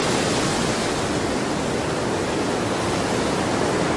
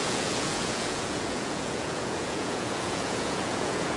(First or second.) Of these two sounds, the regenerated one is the second